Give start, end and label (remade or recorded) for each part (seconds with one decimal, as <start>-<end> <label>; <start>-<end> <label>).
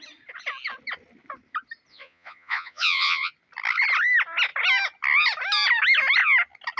0.0-1.9 recorded; 1.9-3.3 remade; 3.3-6.8 recorded